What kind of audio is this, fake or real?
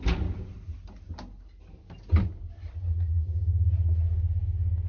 real